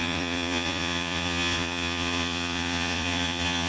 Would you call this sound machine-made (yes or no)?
yes